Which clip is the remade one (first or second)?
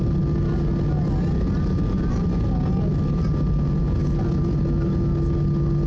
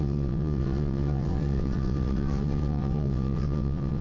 second